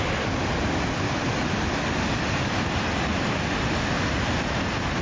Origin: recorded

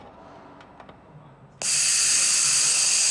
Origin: recorded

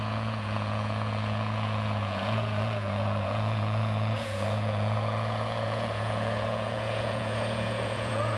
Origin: remade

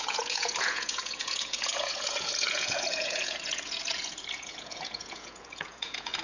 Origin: remade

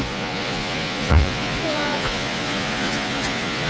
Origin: remade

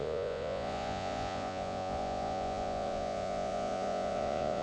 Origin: remade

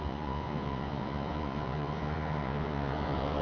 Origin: remade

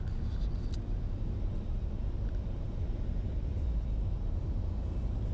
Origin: recorded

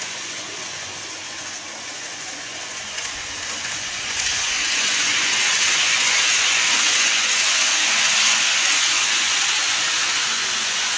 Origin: remade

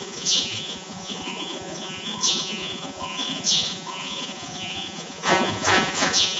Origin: remade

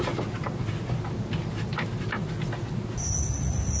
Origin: recorded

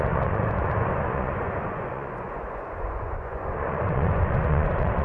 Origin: remade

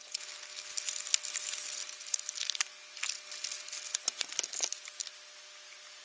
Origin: recorded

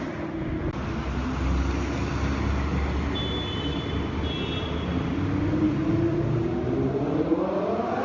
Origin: recorded